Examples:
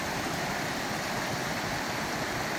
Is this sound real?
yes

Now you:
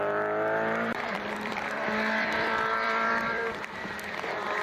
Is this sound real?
no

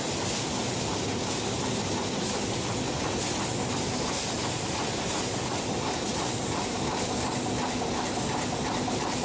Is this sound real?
yes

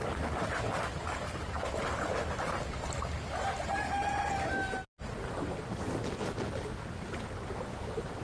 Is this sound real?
yes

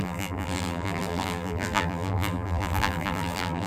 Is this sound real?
no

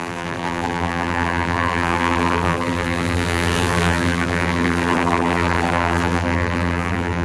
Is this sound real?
no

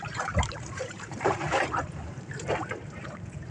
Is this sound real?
no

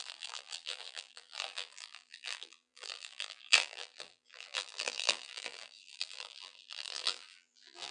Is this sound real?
no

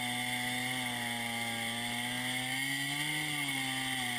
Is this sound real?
yes